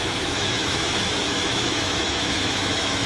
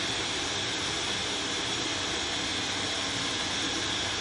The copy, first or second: first